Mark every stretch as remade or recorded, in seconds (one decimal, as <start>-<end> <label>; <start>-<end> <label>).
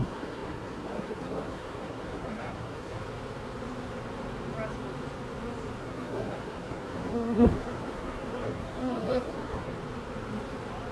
0.0-3.0 remade; 3.0-5.8 recorded; 5.8-9.7 remade; 9.7-10.9 recorded